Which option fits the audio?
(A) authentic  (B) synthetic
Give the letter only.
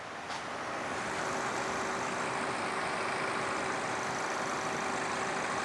A